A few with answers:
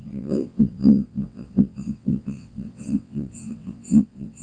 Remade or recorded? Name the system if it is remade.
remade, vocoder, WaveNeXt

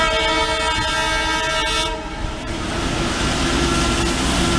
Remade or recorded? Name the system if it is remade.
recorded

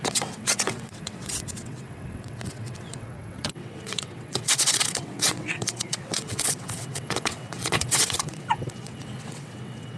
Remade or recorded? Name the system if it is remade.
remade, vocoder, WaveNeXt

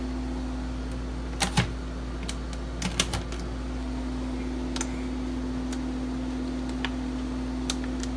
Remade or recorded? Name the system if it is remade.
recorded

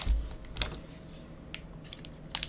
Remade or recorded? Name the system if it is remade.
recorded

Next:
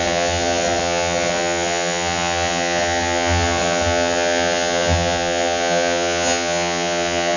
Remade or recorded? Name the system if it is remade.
remade, vocoder, WaveNeXt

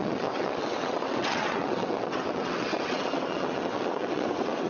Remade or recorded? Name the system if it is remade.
remade, vocoder, WaveNeXt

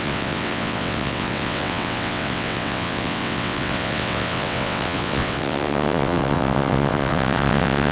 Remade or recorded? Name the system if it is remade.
remade, vocoder, WaveNeXt